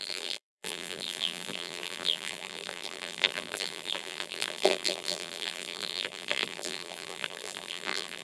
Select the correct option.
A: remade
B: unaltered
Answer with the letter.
A